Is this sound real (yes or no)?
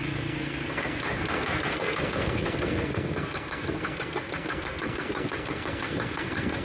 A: no